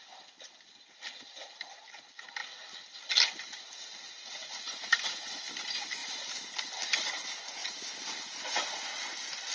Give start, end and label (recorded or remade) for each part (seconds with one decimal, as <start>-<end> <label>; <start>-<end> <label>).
0.0-9.5 recorded